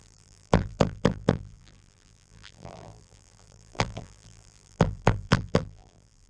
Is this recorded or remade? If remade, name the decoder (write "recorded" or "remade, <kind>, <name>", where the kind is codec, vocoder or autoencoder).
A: remade, vocoder, BigVGAN v2